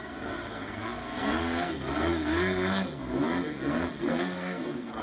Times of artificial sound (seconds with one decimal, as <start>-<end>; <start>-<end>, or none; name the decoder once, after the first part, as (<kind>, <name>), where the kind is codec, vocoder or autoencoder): 0.0-5.0 (codec, SNAC)